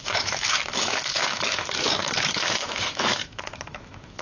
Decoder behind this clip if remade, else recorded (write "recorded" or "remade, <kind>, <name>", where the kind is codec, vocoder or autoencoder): remade, autoencoder, DAC-VAE